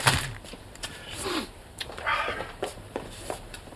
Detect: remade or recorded remade